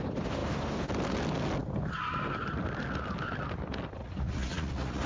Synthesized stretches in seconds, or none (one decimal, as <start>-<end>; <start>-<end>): 4.0-5.1